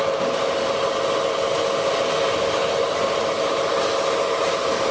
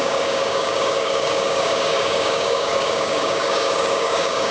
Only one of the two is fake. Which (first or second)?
second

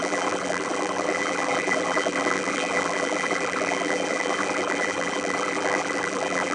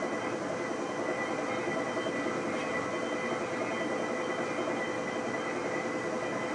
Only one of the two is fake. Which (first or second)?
first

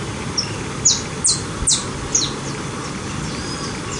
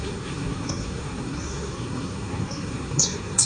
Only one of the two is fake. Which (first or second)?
second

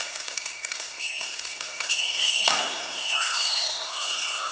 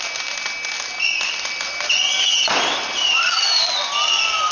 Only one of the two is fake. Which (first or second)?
first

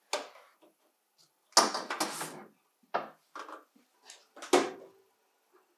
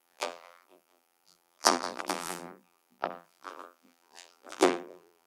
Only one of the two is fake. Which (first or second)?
second